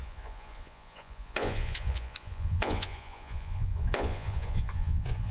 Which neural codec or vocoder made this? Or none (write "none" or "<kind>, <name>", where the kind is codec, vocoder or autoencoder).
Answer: vocoder, Vocos